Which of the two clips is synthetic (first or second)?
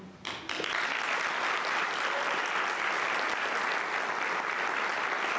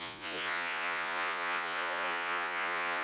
second